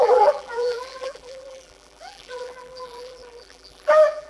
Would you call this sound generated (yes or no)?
yes